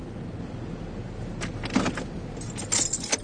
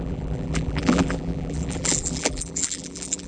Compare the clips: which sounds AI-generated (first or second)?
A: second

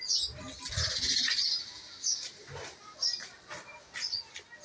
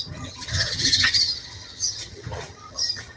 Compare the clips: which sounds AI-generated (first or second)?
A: second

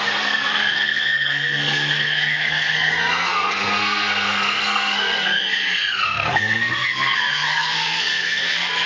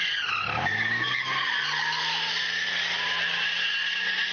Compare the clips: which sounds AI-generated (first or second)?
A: first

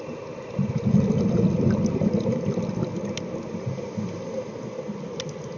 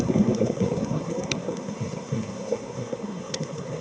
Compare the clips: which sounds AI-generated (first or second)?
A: second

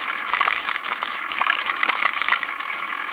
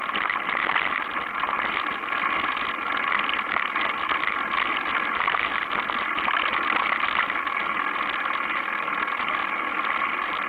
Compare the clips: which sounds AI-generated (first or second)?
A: first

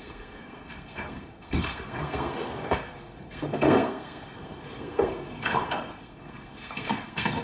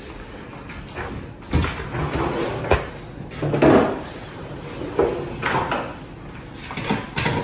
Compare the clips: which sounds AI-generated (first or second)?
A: first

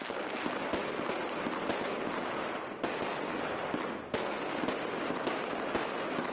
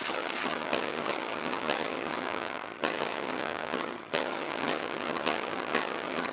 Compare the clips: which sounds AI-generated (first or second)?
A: second